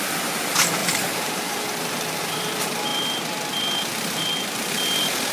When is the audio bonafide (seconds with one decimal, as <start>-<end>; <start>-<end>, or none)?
none